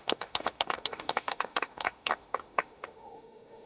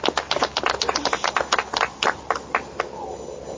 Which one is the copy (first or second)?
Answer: first